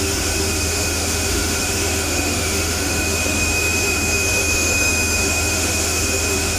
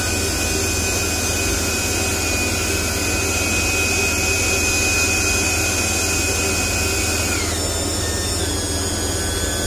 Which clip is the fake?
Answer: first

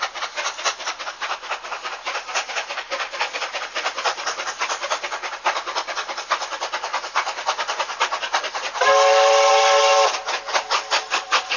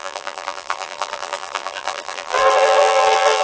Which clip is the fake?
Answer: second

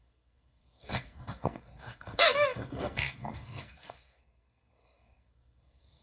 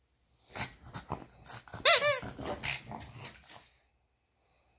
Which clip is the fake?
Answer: first